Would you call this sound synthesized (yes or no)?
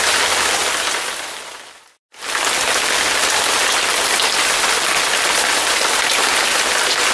no